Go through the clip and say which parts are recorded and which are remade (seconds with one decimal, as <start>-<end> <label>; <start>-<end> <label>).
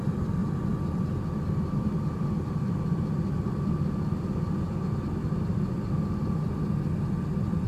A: 0.0-7.7 recorded